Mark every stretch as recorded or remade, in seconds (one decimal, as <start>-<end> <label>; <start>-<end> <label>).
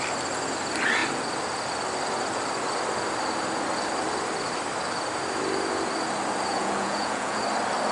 0.0-6.5 recorded; 6.5-7.4 remade; 7.4-7.9 recorded